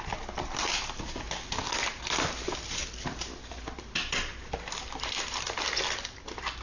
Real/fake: real